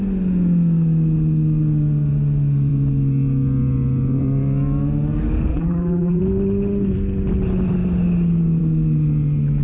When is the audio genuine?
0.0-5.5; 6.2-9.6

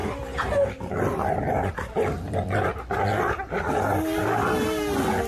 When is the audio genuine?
0.9-1.7; 2.7-5.3

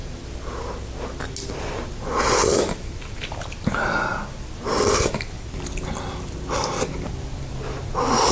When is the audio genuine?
0.0-2.3; 4.1-4.9